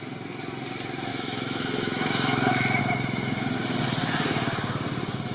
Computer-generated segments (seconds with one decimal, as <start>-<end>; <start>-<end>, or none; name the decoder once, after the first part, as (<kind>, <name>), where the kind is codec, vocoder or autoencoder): 1.1-2.8 (autoencoder, DAC-VAE)

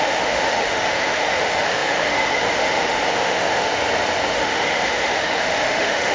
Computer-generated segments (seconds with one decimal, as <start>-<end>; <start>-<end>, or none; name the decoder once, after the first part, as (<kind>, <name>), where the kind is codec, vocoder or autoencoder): 0.0-3.7 (autoencoder, DAC-VAE); 4.3-6.1

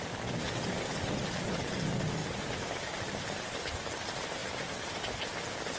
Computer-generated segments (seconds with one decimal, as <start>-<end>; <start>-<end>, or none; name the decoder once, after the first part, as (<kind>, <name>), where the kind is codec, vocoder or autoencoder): 2.2-2.9 (vocoder, BigVGAN v2)

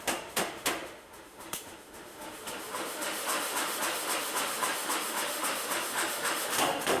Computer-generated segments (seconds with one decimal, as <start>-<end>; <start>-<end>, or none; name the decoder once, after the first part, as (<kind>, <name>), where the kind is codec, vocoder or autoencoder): 0.0-7.0 (autoencoder, DAC-VAE)